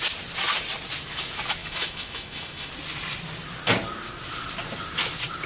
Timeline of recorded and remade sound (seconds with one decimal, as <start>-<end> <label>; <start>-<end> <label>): 0.0-1.6 recorded; 1.6-2.7 remade; 2.7-5.5 recorded